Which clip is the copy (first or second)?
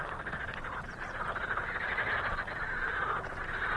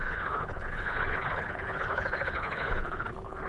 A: second